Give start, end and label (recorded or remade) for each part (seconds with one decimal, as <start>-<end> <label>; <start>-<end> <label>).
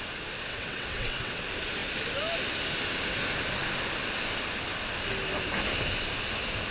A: 0.0-0.5 recorded; 0.5-1.4 remade; 1.4-6.7 recorded